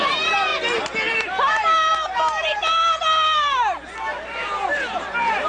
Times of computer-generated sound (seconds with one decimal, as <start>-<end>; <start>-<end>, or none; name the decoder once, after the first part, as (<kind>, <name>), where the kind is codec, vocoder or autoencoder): 0.0-0.5 (vocoder, BigVGAN v2); 1.1-5.5